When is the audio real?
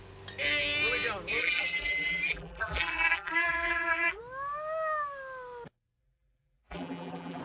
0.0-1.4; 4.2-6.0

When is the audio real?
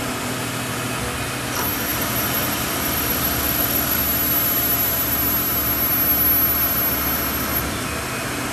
0.0-1.9; 4.0-8.5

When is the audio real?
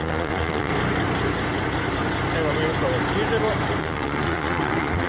0.7-3.8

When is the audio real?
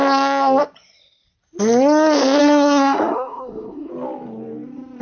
0.0-2.4; 3.9-5.0